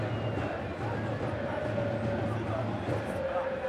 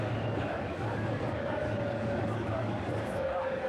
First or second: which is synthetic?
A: second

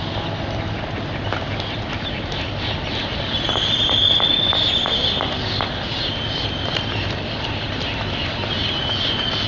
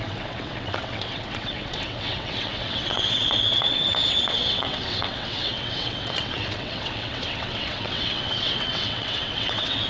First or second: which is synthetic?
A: second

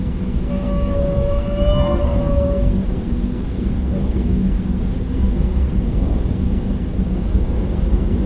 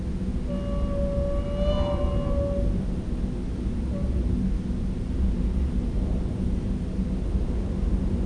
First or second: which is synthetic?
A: first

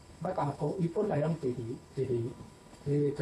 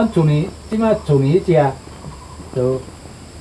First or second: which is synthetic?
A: first